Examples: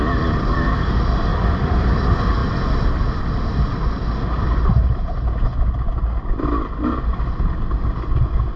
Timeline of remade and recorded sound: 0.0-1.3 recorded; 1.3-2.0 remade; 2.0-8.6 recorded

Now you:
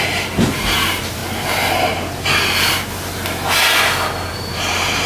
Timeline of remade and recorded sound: 0.0-1.2 remade; 1.2-4.3 recorded; 4.3-5.1 remade

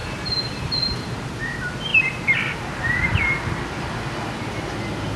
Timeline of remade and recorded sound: 0.0-1.2 remade; 1.2-5.2 recorded

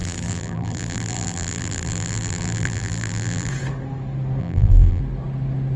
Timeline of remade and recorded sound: 0.0-3.5 remade; 3.5-4.4 recorded; 4.4-5.0 remade; 5.0-5.8 recorded

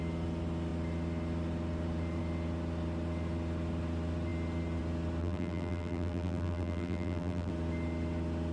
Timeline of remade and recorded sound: 0.0-5.2 recorded; 5.2-7.5 remade; 7.5-8.5 recorded

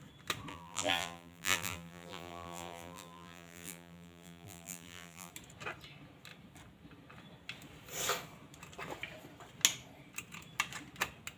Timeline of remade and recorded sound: 0.0-0.5 recorded; 0.5-5.3 remade; 5.3-11.4 recorded